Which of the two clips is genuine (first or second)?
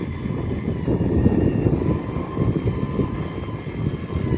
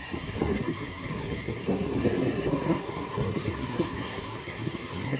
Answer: first